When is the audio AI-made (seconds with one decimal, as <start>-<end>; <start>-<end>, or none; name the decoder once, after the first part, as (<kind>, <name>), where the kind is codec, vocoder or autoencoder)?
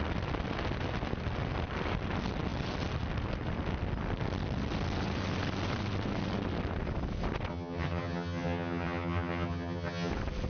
7.5-10.1 (vocoder, HiFi-GAN)